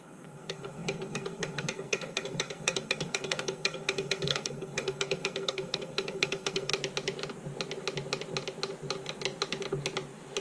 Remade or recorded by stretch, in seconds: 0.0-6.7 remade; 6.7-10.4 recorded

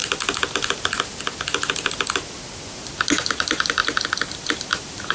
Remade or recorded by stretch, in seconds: 0.0-2.8 recorded; 2.8-3.8 remade; 3.8-4.3 recorded; 4.3-5.1 remade

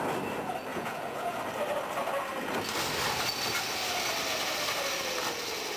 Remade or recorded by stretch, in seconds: 0.0-0.7 recorded; 0.7-1.4 remade; 1.4-5.8 recorded

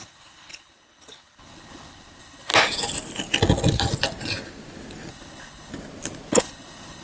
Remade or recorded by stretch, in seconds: 0.0-2.5 remade; 2.5-5.1 recorded; 5.1-5.7 remade; 5.7-6.3 recorded; 6.3-7.0 remade